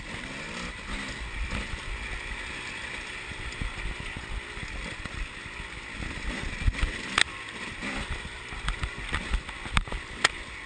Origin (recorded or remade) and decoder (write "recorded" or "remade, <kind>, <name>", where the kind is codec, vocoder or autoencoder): recorded